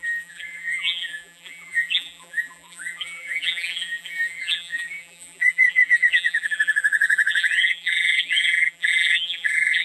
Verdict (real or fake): fake